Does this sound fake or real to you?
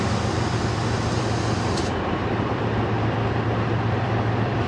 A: fake